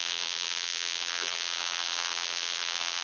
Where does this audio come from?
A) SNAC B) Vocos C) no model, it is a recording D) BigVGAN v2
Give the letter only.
D